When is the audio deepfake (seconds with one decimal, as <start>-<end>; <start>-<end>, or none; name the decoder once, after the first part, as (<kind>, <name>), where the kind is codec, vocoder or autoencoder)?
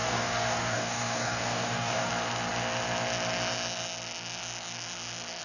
0.0-2.1 (codec, DAC)